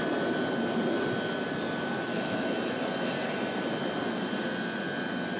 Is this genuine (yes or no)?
yes